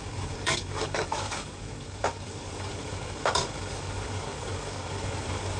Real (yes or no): no